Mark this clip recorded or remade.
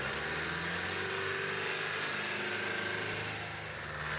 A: recorded